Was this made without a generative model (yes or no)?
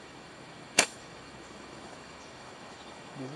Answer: no